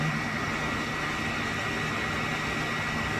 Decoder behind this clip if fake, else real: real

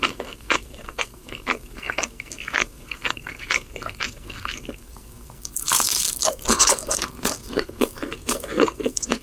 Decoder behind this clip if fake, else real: fake, codec, SNAC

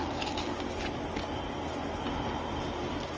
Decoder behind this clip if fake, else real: real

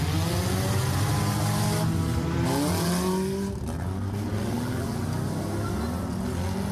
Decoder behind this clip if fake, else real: real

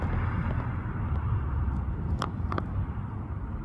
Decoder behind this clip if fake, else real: real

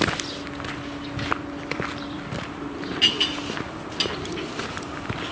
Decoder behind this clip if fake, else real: real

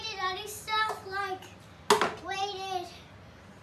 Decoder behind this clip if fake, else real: real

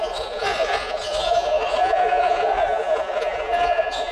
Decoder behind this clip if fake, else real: fake, vocoder, Vocos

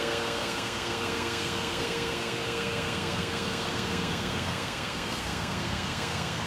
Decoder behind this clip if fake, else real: fake, codec, SNAC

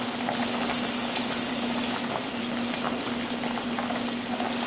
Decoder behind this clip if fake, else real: real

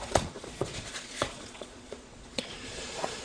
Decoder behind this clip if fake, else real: fake, vocoder, Vocos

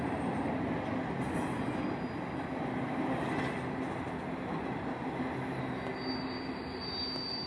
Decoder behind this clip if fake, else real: real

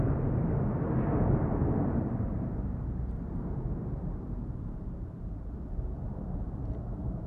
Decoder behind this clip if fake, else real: fake, vocoder, BigVGAN v2